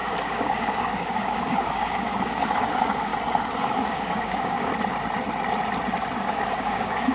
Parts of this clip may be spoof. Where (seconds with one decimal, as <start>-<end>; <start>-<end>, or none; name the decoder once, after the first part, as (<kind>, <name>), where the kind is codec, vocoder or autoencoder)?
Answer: 0.0-3.1 (codec, DAC); 3.6-4.7; 6.2-7.1